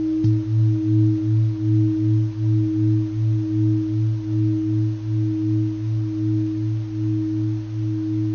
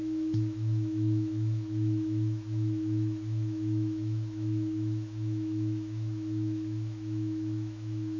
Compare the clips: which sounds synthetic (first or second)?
second